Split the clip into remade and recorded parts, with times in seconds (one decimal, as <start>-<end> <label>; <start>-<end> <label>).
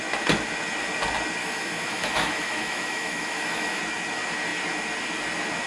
0.0-1.4 recorded; 1.4-3.8 remade; 3.8-5.7 recorded